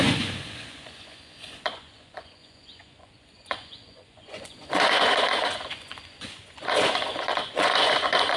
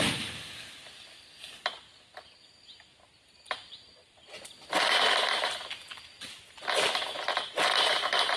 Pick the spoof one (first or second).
first